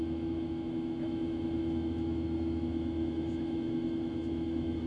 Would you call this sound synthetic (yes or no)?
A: yes